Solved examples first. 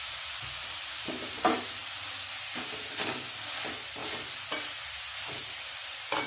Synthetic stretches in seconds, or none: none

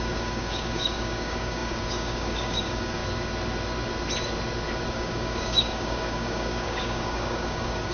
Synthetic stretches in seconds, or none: 0.0-3.0; 4.9-7.9

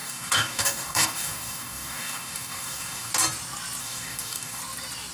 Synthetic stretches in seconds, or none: 0.0-3.1; 3.8-4.6

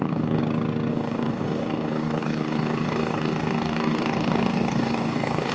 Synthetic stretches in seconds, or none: 0.0-0.4; 0.9-5.5

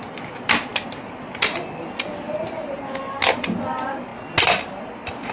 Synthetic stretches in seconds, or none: none

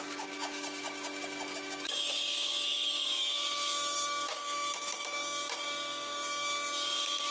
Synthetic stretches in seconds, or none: 0.0-7.3

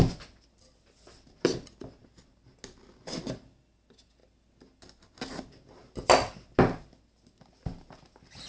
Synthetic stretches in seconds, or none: none